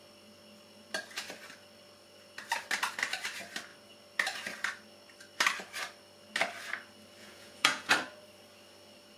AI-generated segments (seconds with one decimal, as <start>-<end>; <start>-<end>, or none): 7.2-7.9